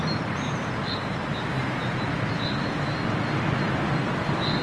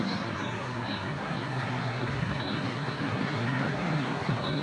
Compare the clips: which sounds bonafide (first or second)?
first